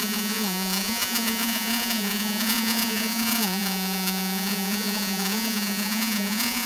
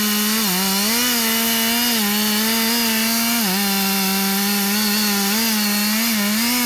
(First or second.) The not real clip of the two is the first